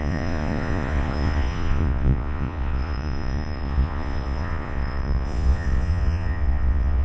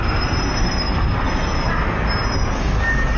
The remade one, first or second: first